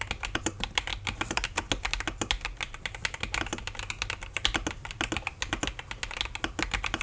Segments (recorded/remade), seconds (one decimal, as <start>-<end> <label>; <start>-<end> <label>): 0.0-7.0 recorded